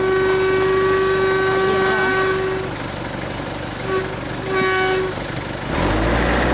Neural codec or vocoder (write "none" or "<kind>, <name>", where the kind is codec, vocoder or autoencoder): none